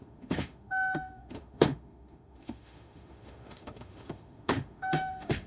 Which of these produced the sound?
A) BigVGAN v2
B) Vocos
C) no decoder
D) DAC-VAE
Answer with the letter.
D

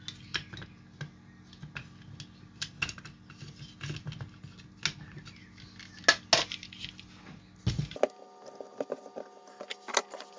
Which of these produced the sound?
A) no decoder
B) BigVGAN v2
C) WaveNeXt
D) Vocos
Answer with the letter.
A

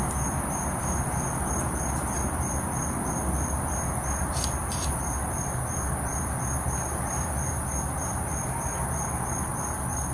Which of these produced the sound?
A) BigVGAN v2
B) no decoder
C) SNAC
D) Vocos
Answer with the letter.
B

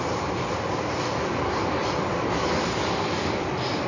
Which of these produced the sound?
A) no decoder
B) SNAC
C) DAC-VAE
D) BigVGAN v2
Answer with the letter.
D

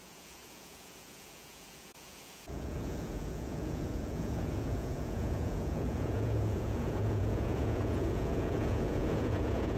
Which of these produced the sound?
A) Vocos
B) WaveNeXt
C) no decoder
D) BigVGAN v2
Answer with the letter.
A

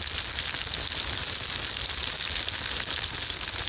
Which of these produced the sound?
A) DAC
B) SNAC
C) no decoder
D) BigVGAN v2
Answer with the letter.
C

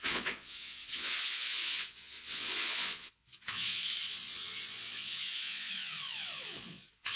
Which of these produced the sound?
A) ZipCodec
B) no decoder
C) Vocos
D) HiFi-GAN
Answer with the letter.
C